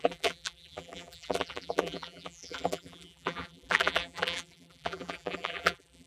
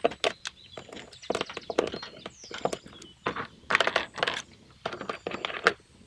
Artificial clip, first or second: first